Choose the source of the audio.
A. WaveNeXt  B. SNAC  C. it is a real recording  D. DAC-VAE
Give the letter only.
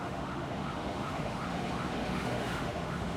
D